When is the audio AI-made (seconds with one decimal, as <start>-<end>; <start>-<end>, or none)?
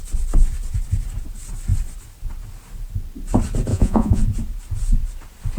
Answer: 3.7-4.2